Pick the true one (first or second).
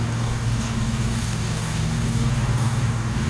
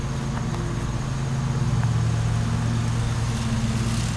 second